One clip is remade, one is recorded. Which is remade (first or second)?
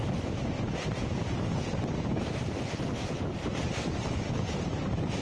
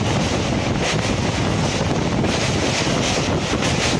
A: first